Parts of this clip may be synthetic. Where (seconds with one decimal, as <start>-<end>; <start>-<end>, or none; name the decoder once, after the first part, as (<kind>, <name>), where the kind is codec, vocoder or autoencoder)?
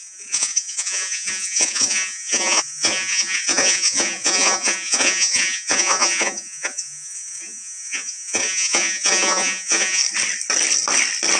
0.0-10.0 (vocoder, Vocos)